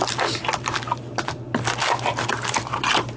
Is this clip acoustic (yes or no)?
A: yes